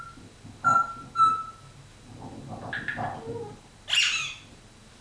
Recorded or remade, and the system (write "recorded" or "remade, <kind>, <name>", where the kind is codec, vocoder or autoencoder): recorded